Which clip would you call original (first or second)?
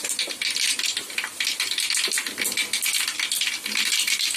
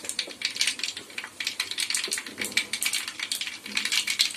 first